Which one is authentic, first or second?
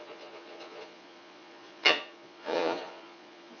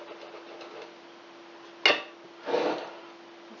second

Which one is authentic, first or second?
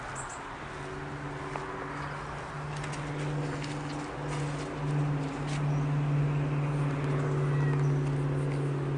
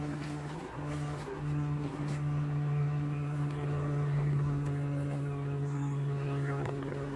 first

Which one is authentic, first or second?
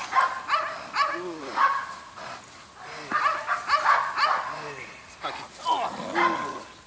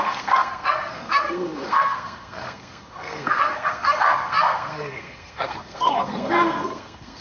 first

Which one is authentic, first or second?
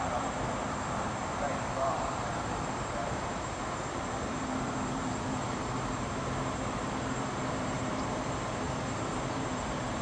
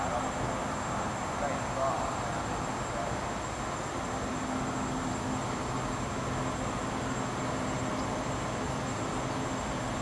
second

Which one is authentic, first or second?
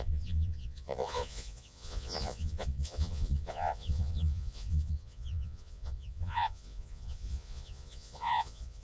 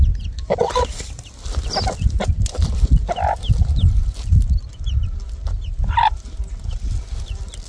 second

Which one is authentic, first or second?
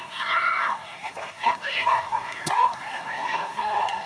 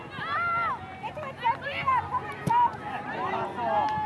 second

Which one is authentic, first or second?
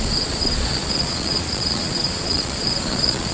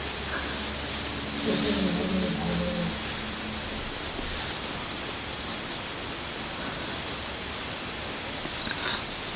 second